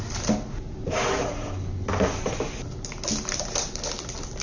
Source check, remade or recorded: recorded